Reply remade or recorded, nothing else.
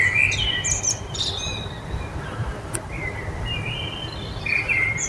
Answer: recorded